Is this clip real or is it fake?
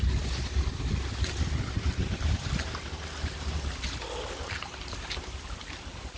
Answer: real